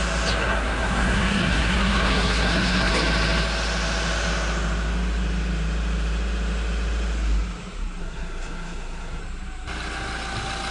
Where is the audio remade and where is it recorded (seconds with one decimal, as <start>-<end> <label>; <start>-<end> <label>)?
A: 0.0-0.4 recorded; 0.4-2.9 remade; 2.9-8.0 recorded; 8.0-9.2 remade; 9.2-10.7 recorded

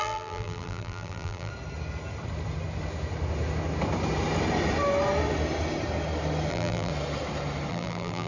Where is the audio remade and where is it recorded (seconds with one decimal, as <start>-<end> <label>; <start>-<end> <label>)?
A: 0.0-1.5 remade; 1.5-6.5 recorded; 6.5-6.9 remade; 6.9-7.7 recorded; 7.7-8.3 remade

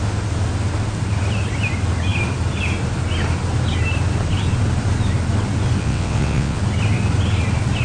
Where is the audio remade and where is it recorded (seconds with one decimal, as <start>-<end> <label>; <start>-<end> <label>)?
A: 0.0-5.8 recorded; 5.8-6.6 remade; 6.6-7.8 recorded

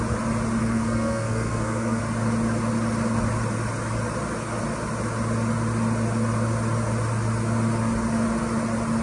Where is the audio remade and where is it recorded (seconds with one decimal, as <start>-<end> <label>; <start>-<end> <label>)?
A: 0.0-0.6 recorded; 0.6-2.0 remade; 2.0-9.0 recorded